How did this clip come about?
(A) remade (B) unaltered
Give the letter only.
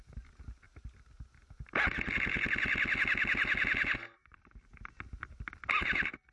B